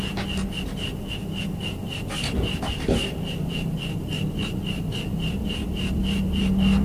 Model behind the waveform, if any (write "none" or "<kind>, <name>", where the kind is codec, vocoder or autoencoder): none